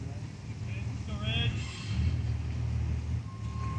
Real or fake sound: real